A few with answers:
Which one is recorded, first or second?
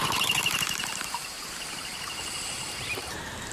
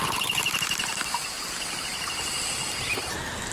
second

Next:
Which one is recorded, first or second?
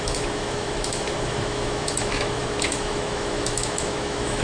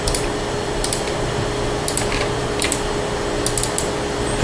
second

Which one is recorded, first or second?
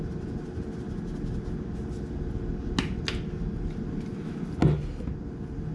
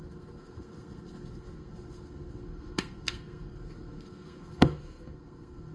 first